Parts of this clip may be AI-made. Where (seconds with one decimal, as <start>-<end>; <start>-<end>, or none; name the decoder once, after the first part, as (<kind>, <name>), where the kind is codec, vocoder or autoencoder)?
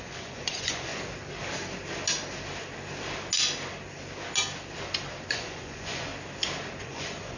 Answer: 0.0-0.9 (vocoder, Vocos); 5.3-6.1; 6.8-7.4